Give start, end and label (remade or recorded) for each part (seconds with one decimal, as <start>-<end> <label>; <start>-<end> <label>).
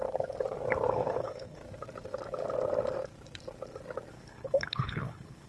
0.0-0.9 recorded; 0.9-1.6 remade; 1.6-4.1 recorded; 4.1-5.5 remade